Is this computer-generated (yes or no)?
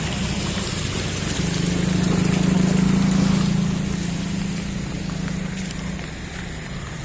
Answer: no